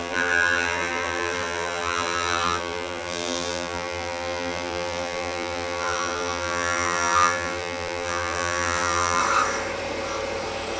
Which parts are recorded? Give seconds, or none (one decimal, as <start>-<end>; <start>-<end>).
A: 9.2-10.8